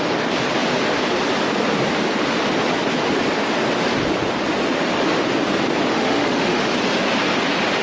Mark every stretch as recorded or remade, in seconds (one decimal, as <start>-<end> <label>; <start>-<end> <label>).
0.0-5.9 recorded; 5.9-6.7 remade; 6.7-7.8 recorded